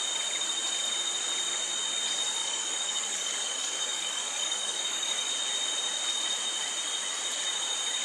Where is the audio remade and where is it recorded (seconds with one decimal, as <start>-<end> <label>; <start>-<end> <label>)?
0.0-2.4 recorded; 2.4-5.3 remade; 5.3-8.0 recorded